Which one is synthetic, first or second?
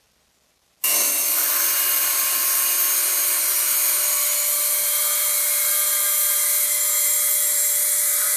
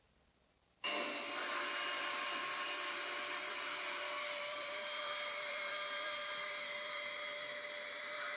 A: second